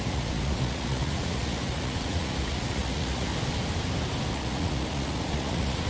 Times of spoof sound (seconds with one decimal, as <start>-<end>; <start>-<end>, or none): 0.0-3.3; 4.3-5.9